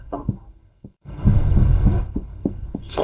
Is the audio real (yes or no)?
no